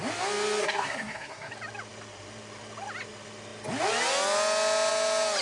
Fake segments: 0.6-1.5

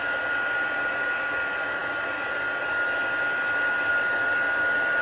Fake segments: none